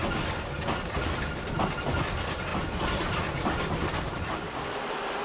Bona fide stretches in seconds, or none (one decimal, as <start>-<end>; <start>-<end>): 0.0-5.2